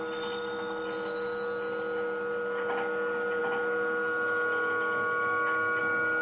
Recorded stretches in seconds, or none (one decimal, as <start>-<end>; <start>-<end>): 0.0-6.2